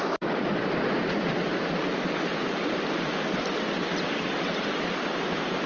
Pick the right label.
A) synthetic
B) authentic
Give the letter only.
B